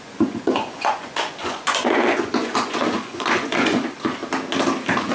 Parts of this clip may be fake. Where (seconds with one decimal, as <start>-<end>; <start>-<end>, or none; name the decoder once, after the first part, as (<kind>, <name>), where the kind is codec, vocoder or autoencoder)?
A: 0.0-4.2 (vocoder, Vocos)